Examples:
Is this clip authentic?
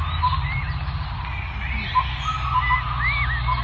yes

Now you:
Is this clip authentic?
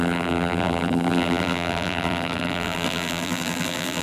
no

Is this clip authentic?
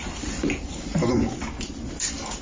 yes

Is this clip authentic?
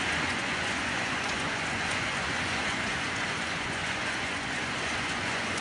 no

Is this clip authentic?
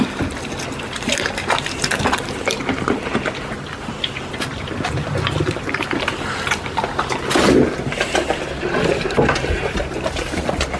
yes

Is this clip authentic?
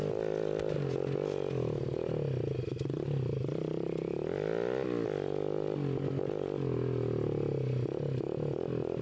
yes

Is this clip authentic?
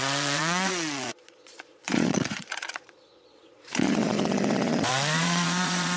no